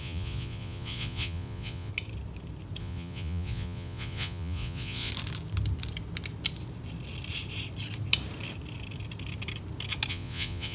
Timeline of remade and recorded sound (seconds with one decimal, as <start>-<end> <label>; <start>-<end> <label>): 0.0-1.9 remade; 1.9-2.8 recorded; 2.8-5.1 remade; 5.1-10.1 recorded; 10.1-10.7 remade